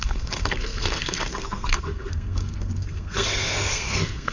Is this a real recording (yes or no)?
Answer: no